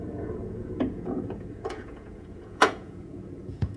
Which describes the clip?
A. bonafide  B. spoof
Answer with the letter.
B